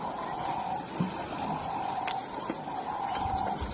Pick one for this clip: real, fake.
real